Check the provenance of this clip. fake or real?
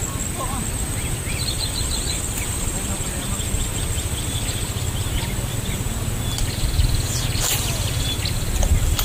real